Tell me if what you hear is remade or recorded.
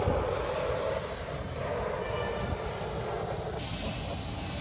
recorded